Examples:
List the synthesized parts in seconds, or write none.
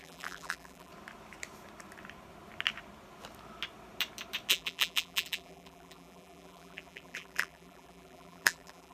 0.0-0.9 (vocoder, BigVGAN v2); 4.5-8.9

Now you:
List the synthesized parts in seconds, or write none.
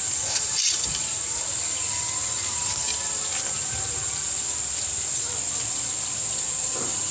0.0-3.0 (vocoder, BigVGAN v2); 6.6-7.1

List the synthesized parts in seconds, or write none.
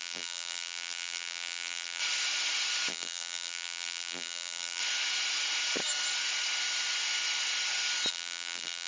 0.0-2.0 (vocoder, BigVGAN v2); 2.9-4.8; 8.1-8.9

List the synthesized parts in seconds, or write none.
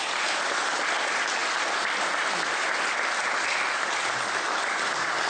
none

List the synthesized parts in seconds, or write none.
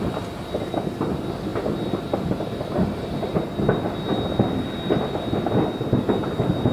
none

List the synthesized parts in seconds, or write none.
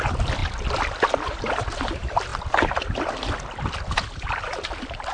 0.0-2.3 (vocoder, BigVGAN v2)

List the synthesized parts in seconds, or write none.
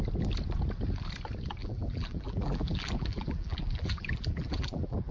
1.6-5.1 (vocoder, BigVGAN v2)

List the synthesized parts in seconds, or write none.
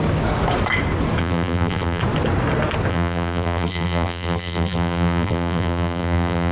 1.2-2.0 (vocoder, BigVGAN v2); 2.9-6.5